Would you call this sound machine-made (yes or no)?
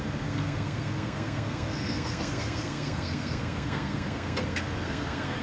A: yes